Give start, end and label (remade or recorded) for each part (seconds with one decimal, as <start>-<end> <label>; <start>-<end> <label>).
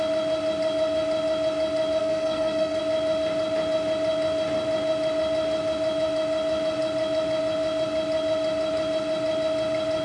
0.0-2.0 recorded; 2.0-2.8 remade; 2.8-10.0 recorded